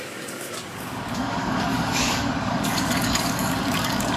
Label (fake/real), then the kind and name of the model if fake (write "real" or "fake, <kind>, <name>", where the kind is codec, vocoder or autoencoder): fake, codec, DAC